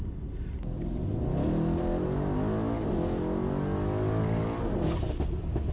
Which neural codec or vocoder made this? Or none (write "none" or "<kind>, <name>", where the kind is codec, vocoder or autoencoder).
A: none